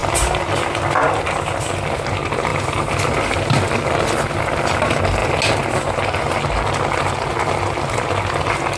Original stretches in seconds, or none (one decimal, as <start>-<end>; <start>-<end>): 0.0-8.8